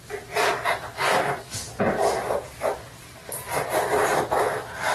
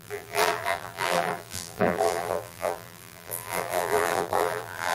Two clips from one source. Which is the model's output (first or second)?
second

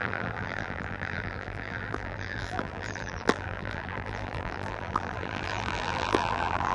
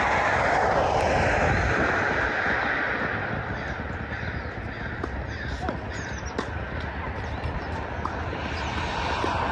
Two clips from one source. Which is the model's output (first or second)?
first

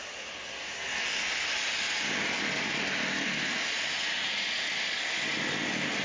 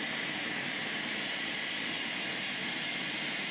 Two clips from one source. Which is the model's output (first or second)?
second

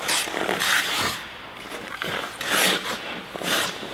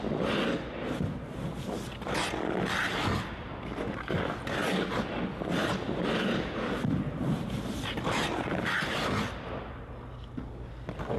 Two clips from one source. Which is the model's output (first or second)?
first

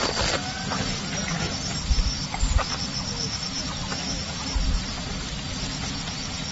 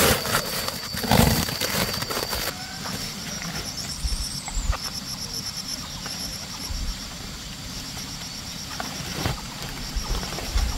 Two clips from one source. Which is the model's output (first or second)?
second